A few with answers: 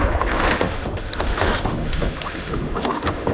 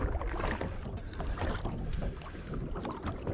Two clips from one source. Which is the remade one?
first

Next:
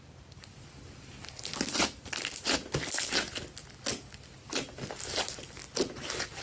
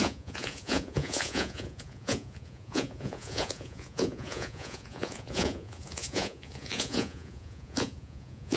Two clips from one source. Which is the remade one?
second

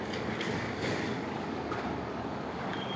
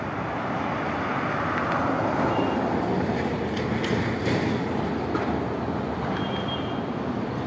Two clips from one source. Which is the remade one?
first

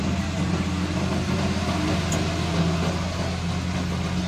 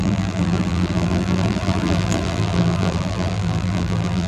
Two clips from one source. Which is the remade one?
second